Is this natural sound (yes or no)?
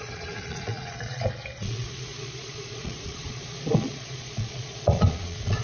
no